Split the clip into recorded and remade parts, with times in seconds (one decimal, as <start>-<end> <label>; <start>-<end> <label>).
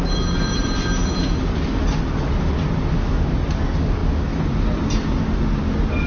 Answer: 0.0-6.1 recorded